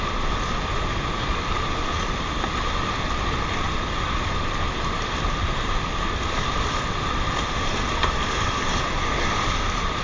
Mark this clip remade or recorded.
recorded